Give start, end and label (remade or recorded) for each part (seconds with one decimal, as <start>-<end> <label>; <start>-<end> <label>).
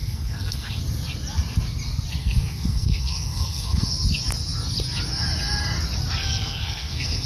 0.0-0.8 remade; 0.8-2.2 recorded; 2.2-3.9 remade; 3.9-6.2 recorded; 6.2-7.3 remade